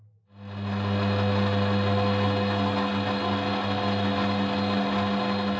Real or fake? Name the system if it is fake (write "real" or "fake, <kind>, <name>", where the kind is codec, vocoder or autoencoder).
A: real